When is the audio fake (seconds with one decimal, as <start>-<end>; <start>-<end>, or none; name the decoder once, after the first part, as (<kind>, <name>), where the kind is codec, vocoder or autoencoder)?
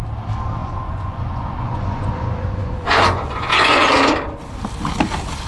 0.6-3.9 (vocoder, Vocos)